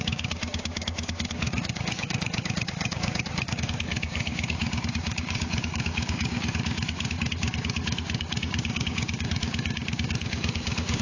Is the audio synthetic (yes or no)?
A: yes